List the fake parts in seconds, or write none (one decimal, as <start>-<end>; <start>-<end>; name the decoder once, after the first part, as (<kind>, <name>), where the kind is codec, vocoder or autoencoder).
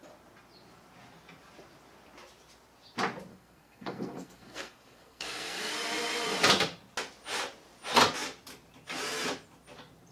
3.3-5.7 (codec, SNAC)